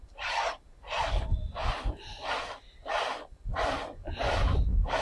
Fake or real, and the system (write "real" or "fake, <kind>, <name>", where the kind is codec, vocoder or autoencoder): real